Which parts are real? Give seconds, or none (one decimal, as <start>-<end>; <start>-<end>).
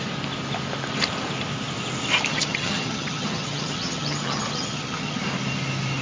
0.0-2.3; 5.2-6.0